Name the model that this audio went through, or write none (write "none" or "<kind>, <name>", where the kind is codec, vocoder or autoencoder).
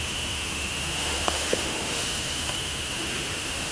autoencoder, DAC-VAE